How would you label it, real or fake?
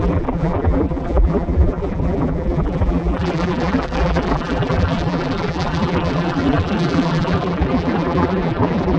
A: fake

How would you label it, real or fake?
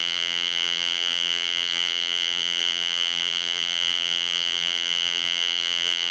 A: fake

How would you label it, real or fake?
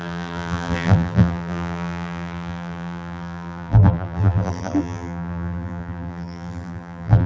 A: fake